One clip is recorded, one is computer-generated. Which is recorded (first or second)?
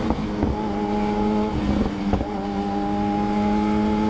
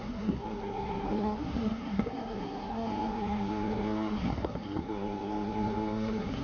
first